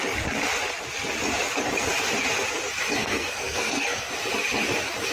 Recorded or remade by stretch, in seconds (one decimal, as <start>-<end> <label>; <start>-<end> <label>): 0.0-3.0 recorded; 3.0-4.1 remade; 4.1-5.1 recorded